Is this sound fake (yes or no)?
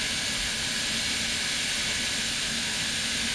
no